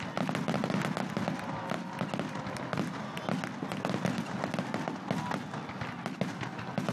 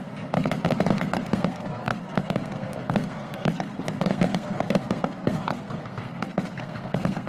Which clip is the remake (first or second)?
second